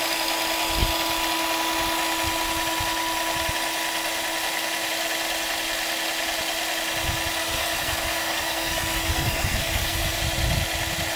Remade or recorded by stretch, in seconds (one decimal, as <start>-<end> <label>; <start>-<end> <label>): 0.0-7.4 recorded; 7.4-10.2 remade; 10.2-11.2 recorded